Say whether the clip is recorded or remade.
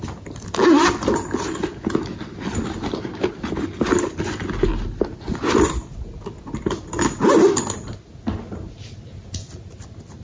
recorded